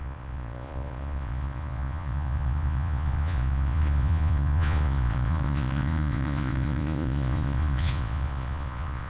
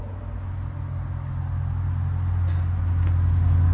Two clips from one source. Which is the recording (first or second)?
second